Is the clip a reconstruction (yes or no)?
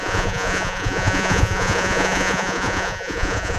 yes